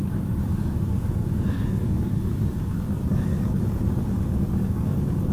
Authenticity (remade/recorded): remade